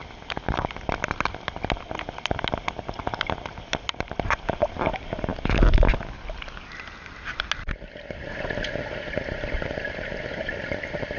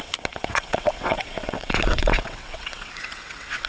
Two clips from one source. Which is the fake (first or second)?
second